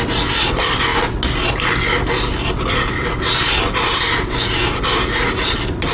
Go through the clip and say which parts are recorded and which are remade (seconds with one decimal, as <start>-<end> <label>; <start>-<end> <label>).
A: 0.0-5.9 recorded